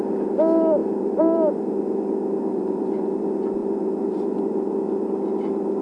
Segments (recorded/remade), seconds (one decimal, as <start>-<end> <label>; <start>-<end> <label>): 0.0-0.8 recorded; 0.8-1.6 remade; 1.6-2.5 recorded; 2.5-3.2 remade; 3.2-3.6 recorded; 3.6-4.4 remade; 4.4-5.8 recorded

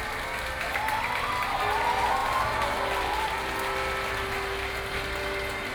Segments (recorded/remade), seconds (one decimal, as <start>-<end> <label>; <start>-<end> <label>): 0.0-5.7 recorded